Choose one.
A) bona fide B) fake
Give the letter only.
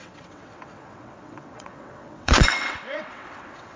B